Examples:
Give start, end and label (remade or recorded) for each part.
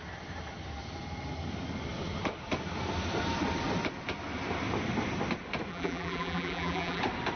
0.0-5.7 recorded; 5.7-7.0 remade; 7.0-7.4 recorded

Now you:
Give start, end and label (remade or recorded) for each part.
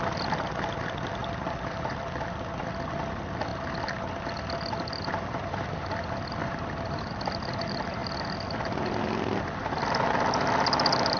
0.0-1.2 recorded; 1.2-2.0 remade; 2.0-6.4 recorded; 6.4-7.1 remade; 7.1-11.2 recorded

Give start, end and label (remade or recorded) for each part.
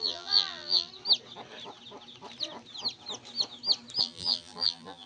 0.0-0.9 remade; 0.9-4.0 recorded; 4.0-5.1 remade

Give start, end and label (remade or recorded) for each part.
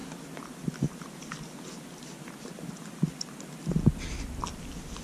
0.0-5.0 recorded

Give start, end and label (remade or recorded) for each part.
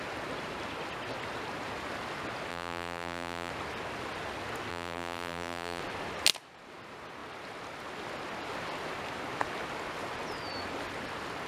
0.0-2.5 recorded; 2.5-3.5 remade; 3.5-4.7 recorded; 4.7-5.8 remade; 5.8-11.5 recorded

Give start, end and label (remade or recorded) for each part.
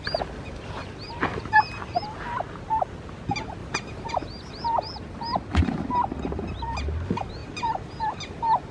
0.0-3.6 recorded; 3.6-4.1 remade; 4.1-7.4 recorded; 7.4-8.2 remade; 8.2-8.7 recorded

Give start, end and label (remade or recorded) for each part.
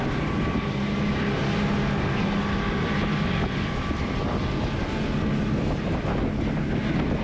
0.0-7.2 recorded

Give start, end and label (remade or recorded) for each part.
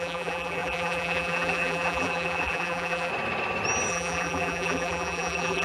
0.0-3.1 remade; 3.1-3.9 recorded; 3.9-5.6 remade